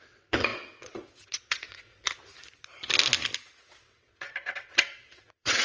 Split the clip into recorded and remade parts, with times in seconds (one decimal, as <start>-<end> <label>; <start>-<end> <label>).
0.0-1.9 remade; 1.9-3.6 recorded; 3.6-5.6 remade

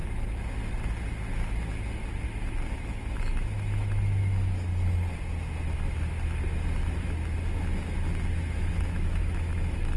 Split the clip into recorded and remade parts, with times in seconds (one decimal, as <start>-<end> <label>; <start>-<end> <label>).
0.0-2.7 recorded; 2.7-4.7 remade; 4.7-8.5 recorded; 8.5-10.0 remade